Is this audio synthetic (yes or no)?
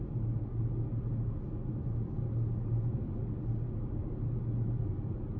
no